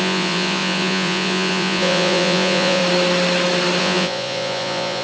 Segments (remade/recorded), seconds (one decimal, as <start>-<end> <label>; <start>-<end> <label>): 0.0-2.8 remade; 2.8-3.8 recorded; 3.8-5.0 remade